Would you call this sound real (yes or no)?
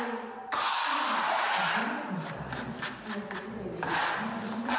yes